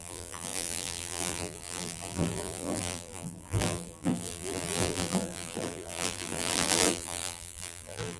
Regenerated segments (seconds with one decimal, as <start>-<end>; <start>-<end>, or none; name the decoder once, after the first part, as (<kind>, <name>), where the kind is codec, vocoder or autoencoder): 0.0-8.2 (vocoder, BigVGAN v2)